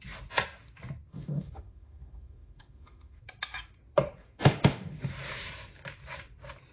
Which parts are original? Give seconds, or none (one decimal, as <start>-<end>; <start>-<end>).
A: 0.0-1.1; 3.2-4.2; 5.1-6.7